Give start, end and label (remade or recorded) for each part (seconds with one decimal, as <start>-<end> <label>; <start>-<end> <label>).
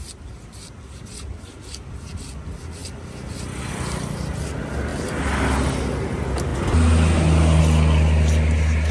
0.0-8.9 recorded